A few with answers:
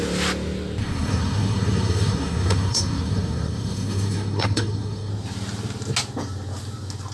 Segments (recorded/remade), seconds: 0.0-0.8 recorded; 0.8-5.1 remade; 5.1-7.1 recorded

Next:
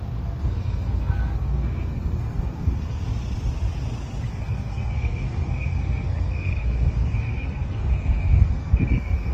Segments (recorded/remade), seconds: 0.0-3.1 remade; 3.1-4.3 recorded; 4.3-9.3 remade

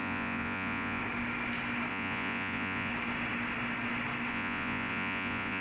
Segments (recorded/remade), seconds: 0.0-1.0 remade; 1.0-1.9 recorded; 1.9-2.9 remade; 2.9-4.3 recorded; 4.3-5.6 remade

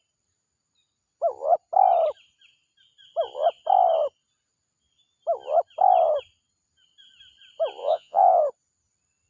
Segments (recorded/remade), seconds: 0.0-7.8 recorded; 7.8-8.4 remade; 8.4-9.3 recorded

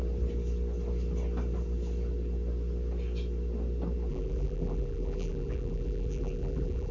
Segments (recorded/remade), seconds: 0.0-4.1 recorded; 4.1-6.9 remade

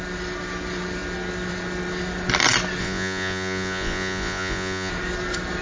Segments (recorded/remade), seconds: 0.0-2.8 recorded; 2.8-4.9 remade; 4.9-5.6 recorded